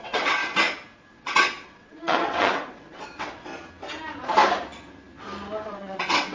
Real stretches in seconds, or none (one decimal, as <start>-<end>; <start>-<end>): 0.4-1.1; 3.5-5.7